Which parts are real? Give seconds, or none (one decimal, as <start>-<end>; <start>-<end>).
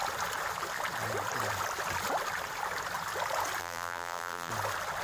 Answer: 0.0-3.6; 4.5-5.0